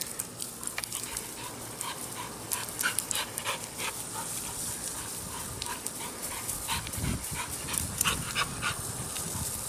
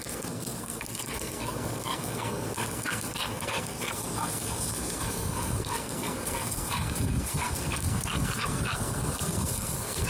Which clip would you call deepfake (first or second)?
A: second